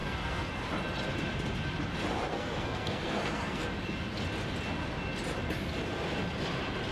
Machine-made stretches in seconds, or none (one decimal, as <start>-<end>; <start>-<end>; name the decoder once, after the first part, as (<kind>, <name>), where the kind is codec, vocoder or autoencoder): 0.0-0.5 (codec, SNAC); 2.3-3.6